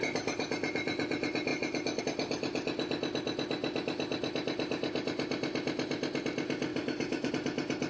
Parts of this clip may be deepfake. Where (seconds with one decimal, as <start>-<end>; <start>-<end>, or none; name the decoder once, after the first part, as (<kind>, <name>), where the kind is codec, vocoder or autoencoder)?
6.7-7.3 (codec, DAC)